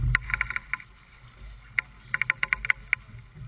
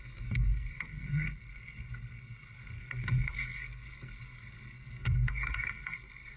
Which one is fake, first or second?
second